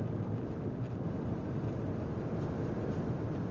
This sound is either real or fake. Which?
real